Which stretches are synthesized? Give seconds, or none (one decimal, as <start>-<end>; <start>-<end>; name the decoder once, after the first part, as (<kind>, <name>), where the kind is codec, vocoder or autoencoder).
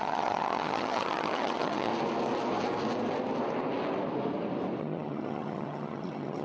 0.0-1.9 (vocoder, HiFi-GAN); 4.8-6.4